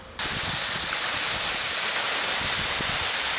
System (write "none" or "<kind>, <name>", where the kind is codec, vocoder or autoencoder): none